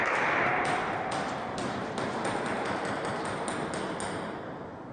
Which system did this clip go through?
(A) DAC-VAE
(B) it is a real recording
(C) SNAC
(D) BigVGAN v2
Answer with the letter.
B